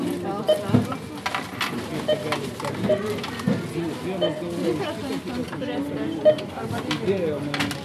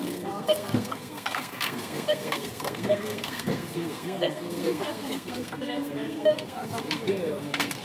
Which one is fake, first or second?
second